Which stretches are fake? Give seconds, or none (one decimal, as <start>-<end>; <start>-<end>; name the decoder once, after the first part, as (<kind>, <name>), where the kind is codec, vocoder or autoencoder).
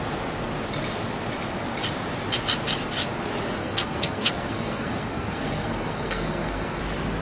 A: 3.6-6.8 (codec, SNAC)